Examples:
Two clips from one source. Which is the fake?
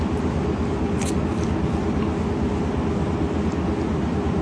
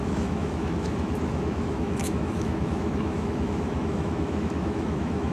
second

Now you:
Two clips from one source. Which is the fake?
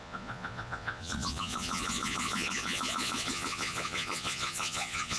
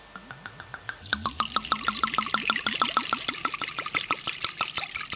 first